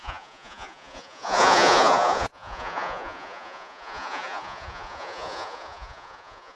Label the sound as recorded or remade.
remade